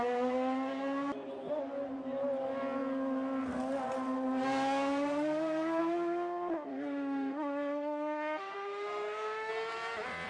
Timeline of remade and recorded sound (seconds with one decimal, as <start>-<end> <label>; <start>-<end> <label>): 0.0-6.7 recorded; 6.7-9.5 remade; 9.5-10.3 recorded